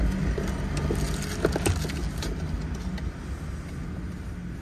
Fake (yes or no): no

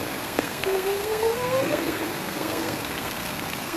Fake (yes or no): yes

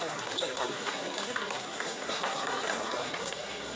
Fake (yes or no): yes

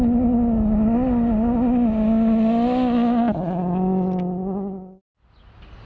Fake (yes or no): no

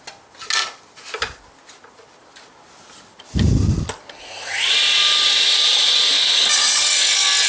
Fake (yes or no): no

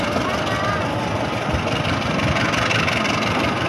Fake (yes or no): no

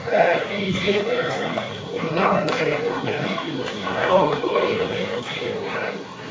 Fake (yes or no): yes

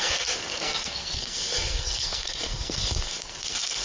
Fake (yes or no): yes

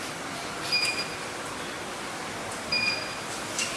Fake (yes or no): no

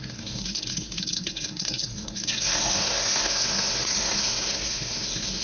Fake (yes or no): yes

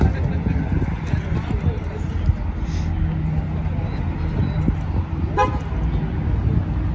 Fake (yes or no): no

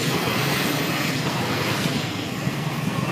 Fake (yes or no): yes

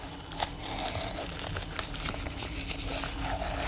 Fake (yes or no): no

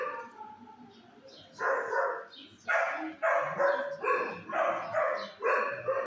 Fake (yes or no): no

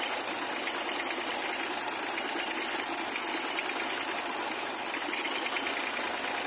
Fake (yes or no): no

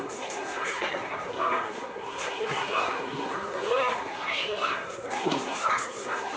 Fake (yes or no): yes